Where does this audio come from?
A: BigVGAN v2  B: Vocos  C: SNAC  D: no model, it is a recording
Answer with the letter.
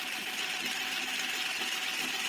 D